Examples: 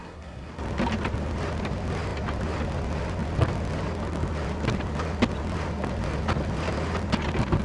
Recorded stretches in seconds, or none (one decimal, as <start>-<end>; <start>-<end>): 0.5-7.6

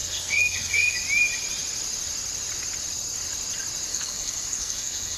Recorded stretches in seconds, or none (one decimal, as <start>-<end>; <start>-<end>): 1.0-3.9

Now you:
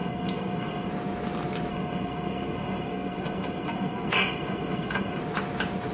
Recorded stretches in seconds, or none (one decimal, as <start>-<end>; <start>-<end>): 0.9-1.7; 5.2-5.9

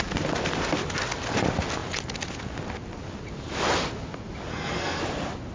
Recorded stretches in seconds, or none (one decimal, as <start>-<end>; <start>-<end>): 0.0-4.5; 5.0-5.5

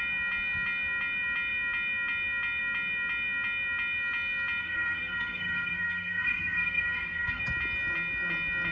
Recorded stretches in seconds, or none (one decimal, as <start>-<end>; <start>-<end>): 0.0-4.6; 7.4-8.7

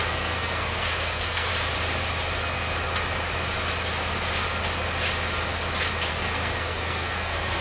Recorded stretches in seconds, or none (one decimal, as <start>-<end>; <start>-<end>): 1.5-6.1